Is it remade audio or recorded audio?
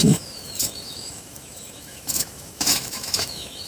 remade